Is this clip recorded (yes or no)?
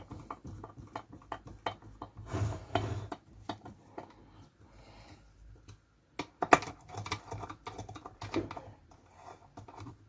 yes